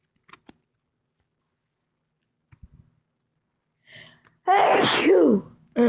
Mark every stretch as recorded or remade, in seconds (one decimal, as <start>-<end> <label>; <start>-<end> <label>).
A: 0.0-5.9 recorded